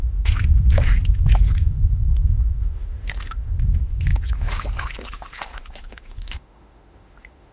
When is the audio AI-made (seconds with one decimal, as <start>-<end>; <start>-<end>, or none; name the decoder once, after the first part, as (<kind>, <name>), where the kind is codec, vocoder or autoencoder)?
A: 0.0-7.5 (autoencoder, DAC-VAE)